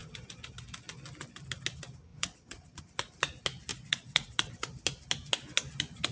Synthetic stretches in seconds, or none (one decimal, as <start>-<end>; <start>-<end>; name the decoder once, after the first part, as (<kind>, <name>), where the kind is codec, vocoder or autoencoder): 2.1-2.8 (vocoder, Vocos); 3.7-4.5

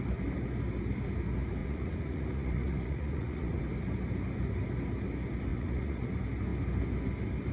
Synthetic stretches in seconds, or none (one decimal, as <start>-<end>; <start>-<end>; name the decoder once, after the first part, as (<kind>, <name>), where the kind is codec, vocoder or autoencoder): 1.6-3.6 (vocoder, Vocos); 5.5-6.1